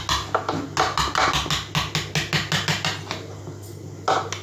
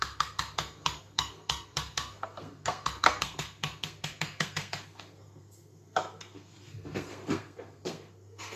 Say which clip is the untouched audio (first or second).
first